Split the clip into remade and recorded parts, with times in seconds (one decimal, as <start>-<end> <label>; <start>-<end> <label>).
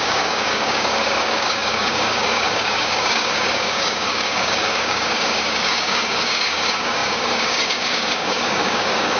0.0-9.2 remade